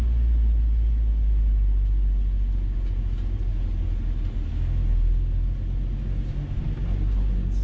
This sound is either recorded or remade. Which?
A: recorded